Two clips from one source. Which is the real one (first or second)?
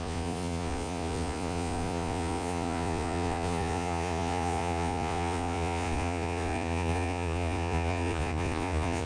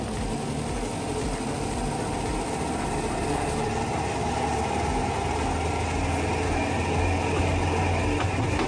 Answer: second